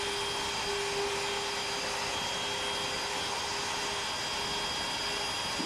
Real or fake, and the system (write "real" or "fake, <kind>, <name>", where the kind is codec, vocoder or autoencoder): real